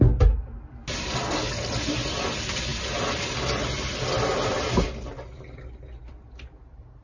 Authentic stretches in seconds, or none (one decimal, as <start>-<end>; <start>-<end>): 0.0-7.0